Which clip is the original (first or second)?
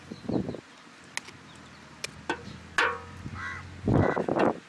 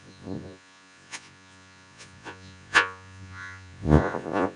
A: first